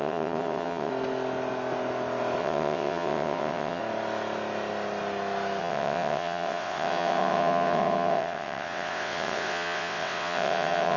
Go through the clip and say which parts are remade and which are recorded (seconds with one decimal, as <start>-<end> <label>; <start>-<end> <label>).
0.0-0.9 remade; 0.9-2.4 recorded; 2.4-3.8 remade; 3.8-5.6 recorded; 5.6-11.0 remade